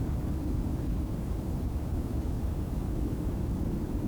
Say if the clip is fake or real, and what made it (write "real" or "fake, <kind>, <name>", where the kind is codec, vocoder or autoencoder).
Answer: fake, codec, DAC